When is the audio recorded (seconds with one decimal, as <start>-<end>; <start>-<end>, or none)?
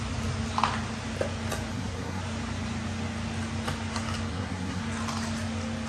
0.0-1.7; 2.2-4.3; 4.8-5.9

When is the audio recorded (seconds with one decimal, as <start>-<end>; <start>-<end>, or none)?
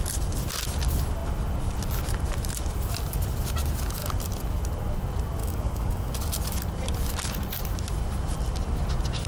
0.0-5.4; 6.1-9.3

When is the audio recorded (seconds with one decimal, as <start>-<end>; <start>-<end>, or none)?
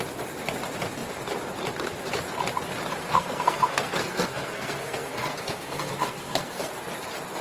0.0-3.0; 6.7-7.4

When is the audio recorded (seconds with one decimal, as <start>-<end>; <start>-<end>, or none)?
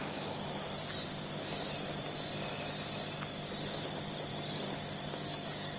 0.0-4.3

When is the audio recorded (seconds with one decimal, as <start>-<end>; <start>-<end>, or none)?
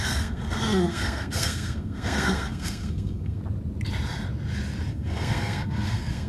3.4-4.9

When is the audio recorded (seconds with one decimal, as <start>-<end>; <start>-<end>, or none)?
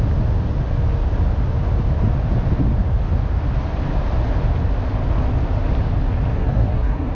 0.0-6.3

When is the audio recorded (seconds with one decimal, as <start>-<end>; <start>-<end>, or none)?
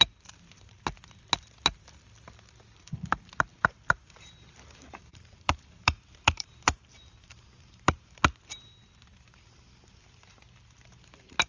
0.0-3.5; 8.2-11.5